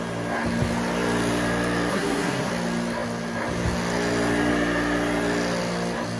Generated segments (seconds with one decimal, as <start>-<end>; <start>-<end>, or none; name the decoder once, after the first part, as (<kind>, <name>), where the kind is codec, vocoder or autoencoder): 1.9-2.5 (codec, SNAC)